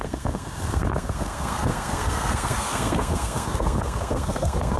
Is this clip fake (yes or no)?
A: yes